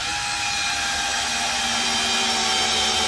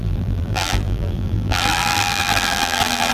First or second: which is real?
first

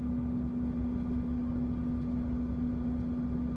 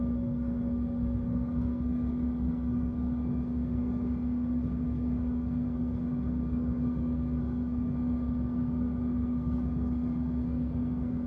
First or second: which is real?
first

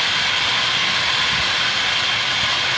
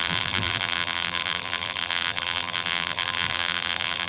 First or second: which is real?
first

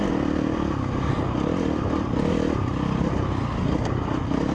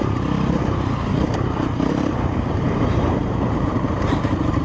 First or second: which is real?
first